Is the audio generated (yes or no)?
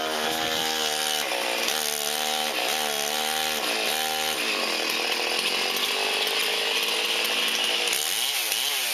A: no